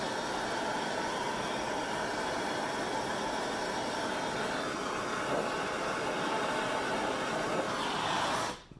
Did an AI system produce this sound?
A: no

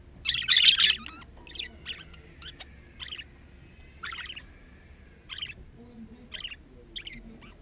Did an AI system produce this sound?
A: no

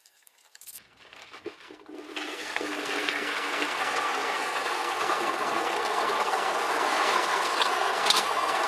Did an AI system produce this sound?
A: yes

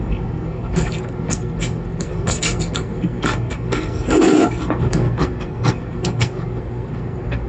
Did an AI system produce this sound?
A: yes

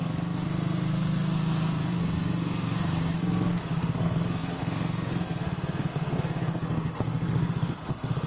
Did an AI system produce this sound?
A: yes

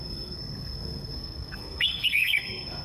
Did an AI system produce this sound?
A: yes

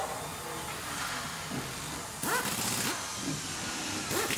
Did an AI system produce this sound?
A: no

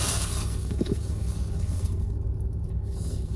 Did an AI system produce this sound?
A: yes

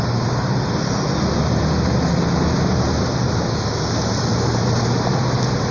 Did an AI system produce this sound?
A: no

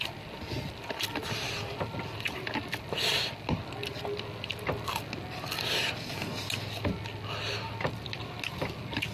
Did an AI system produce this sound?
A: no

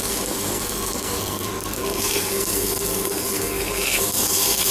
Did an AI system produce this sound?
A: yes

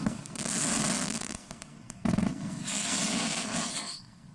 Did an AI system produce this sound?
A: yes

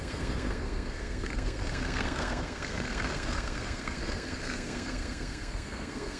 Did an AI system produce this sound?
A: yes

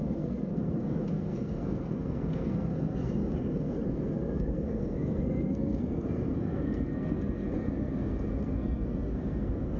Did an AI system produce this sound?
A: yes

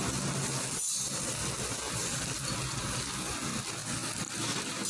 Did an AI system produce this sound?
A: no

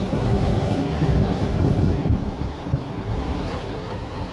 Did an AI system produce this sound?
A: yes